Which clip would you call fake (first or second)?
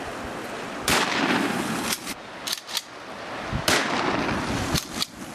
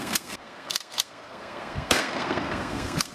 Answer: second